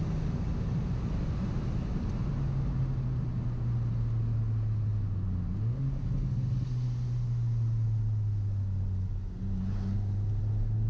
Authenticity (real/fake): real